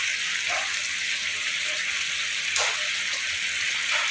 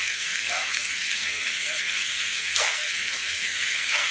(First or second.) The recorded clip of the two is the first